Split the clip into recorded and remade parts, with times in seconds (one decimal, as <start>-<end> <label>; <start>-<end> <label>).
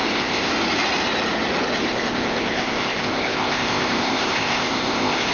0.0-0.5 remade; 0.5-1.8 recorded; 1.8-5.3 remade